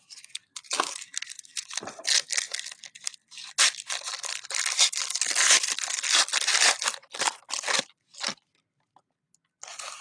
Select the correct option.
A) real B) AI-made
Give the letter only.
A